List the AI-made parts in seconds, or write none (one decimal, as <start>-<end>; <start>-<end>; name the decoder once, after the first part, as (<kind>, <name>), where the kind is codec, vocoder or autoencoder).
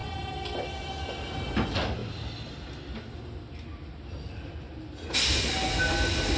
none